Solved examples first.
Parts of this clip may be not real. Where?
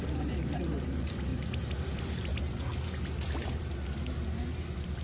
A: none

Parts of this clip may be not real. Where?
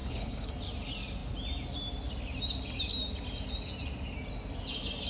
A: 0.0-0.5 (codec, HILCodec)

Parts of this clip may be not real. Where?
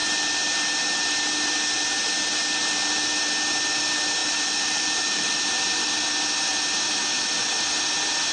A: 4.2-6.0 (vocoder, BigVGAN v2)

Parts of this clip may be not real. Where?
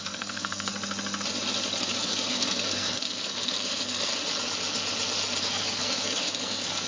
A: 0.0-0.7 (codec, SNAC); 1.8-4.1; 5.4-6.9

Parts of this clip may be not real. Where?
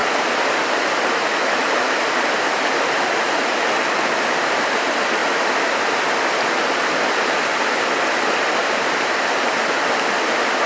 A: 8.6-9.2 (vocoder, BigVGAN v2)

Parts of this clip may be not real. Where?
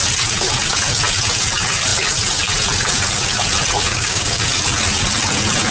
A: 3.9-4.4 (codec, DAC)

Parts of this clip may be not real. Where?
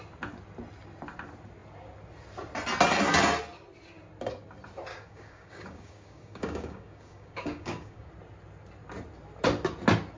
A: 4.9-8.1 (codec, DAC)